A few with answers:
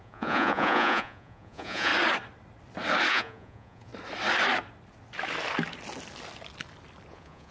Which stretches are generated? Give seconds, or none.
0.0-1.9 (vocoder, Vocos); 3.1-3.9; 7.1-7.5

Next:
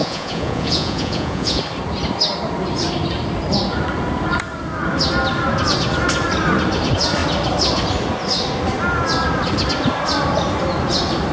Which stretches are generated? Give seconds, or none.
0.0-1.6 (vocoder, Vocos)

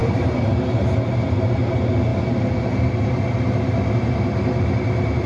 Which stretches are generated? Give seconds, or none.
0.0-1.1 (vocoder, BigVGAN v2)

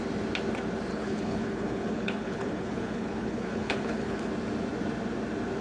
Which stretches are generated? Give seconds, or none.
0.9-4.3 (codec, HILCodec)

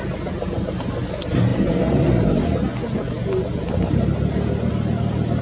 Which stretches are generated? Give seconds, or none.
none

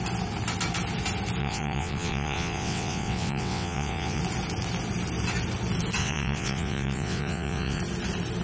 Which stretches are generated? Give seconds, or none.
1.4-4.2 (vocoder, WaveNeXt); 6.0-7.8

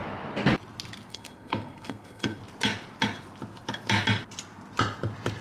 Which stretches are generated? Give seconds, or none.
1.1-2.4 (codec, SNAC)

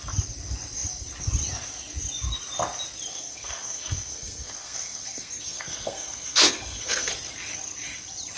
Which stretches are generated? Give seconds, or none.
3.1-7.1 (codec, SNAC)